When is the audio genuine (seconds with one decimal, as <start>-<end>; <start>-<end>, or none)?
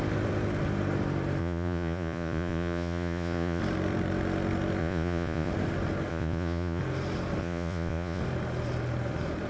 0.0-1.4; 3.6-4.8; 5.5-6.1; 6.8-7.4; 8.2-9.5